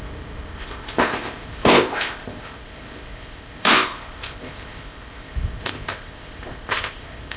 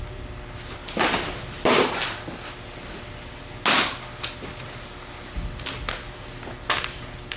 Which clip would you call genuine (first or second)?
second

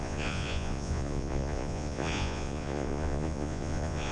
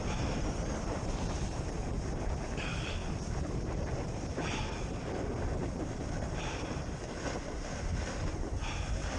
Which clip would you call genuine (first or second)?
second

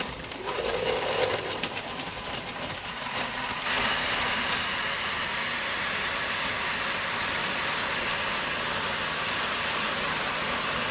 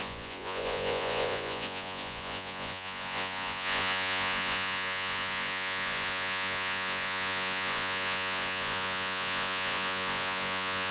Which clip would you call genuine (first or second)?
first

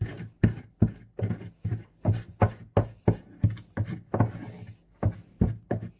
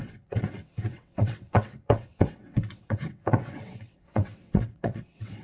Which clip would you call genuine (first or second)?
first